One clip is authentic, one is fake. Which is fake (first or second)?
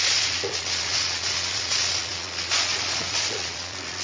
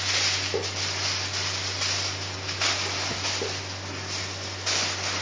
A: first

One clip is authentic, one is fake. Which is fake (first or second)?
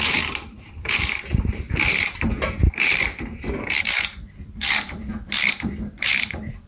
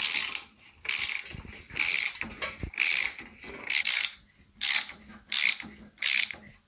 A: first